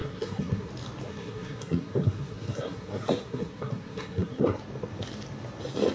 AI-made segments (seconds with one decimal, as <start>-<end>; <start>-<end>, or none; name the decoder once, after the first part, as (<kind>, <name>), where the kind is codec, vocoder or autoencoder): 0.0-0.7 (codec, SNAC); 1.1-4.6